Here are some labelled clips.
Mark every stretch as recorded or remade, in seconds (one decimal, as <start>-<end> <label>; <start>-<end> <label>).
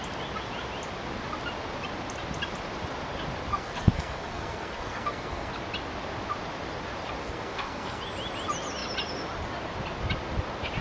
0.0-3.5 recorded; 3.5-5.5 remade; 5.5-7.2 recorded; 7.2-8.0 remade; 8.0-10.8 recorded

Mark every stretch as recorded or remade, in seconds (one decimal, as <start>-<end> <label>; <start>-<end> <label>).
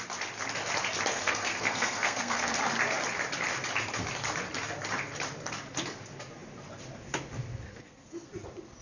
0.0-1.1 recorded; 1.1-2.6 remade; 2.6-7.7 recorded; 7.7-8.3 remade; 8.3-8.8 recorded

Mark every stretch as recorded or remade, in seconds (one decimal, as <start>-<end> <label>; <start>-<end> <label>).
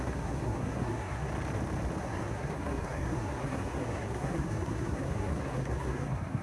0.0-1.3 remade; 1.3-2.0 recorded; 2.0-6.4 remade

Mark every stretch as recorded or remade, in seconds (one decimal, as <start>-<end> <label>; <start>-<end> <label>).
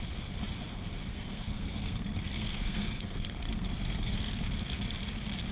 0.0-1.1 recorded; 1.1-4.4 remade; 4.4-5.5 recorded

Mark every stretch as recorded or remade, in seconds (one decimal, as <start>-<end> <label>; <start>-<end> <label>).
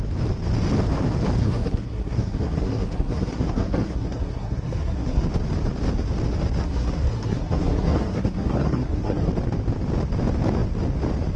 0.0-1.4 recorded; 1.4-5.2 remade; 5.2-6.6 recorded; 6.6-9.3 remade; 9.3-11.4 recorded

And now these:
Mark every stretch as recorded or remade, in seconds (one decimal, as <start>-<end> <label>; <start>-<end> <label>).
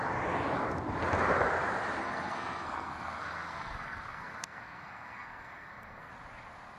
0.0-2.0 recorded; 2.0-6.1 remade; 6.1-6.8 recorded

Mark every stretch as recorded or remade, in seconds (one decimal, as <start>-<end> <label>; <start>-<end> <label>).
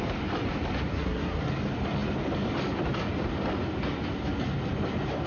0.0-0.9 recorded; 0.9-1.5 remade; 1.5-5.3 recorded